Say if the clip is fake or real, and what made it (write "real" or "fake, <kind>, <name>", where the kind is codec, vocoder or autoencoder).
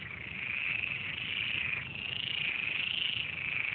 real